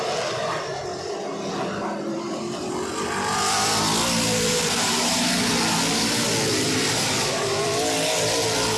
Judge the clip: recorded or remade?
recorded